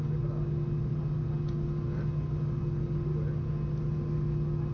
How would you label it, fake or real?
real